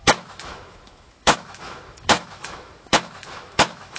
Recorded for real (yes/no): no